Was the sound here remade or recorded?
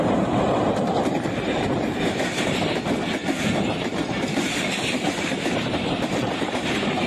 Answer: remade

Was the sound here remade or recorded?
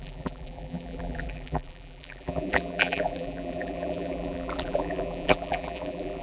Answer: remade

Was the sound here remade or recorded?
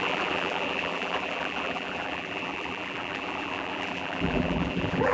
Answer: remade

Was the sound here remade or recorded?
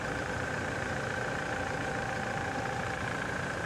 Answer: remade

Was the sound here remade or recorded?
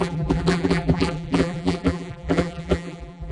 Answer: remade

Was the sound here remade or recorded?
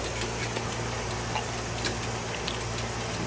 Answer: recorded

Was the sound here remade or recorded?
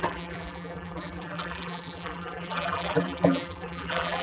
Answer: remade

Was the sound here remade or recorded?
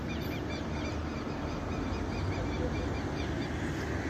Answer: recorded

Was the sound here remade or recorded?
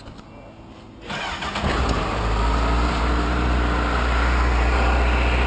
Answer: recorded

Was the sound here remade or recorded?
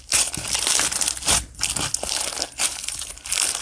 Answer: recorded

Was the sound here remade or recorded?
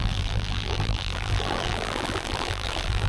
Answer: remade